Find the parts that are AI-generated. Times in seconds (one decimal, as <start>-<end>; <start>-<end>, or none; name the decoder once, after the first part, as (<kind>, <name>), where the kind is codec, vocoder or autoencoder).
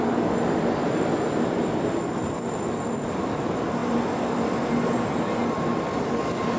3.8-4.9 (vocoder, BigVGAN v2)